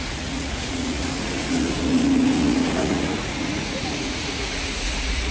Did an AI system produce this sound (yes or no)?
yes